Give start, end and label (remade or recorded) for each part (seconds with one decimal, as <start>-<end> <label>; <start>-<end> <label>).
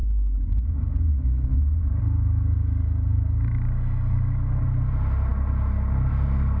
0.0-1.6 remade; 1.6-2.0 recorded; 2.0-4.6 remade; 4.6-6.6 recorded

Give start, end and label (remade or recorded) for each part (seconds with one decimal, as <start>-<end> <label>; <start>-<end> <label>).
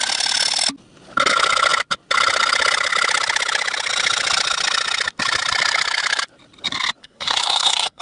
0.0-7.0 recorded; 7.0-8.0 remade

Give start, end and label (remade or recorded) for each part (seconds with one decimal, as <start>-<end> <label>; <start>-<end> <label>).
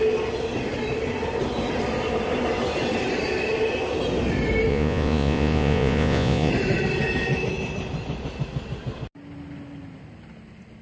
0.0-4.7 recorded; 4.7-6.5 remade; 6.5-10.8 recorded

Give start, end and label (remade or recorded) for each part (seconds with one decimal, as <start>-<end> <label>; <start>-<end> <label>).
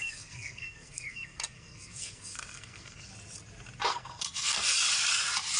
0.0-3.1 remade; 3.1-3.9 recorded; 3.9-4.7 remade; 4.7-5.6 recorded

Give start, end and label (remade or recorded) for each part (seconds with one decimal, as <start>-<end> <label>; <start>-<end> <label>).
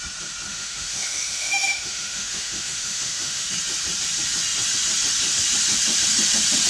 0.0-0.5 recorded; 0.5-3.5 remade; 3.5-6.7 recorded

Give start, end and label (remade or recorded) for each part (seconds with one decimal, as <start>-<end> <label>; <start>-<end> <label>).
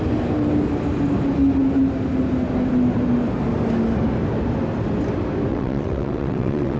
0.0-5.5 recorded; 5.5-6.8 remade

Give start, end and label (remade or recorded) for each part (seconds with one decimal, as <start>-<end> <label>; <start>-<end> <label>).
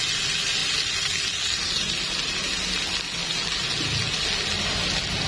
0.0-5.3 recorded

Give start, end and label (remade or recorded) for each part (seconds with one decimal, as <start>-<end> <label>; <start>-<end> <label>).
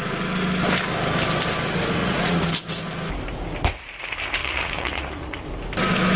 0.0-2.0 recorded; 2.0-2.5 remade; 2.5-4.4 recorded; 4.4-5.4 remade; 5.4-6.2 recorded